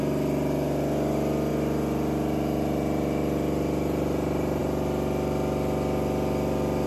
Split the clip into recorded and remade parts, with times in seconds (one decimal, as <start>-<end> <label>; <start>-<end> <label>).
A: 0.0-6.9 recorded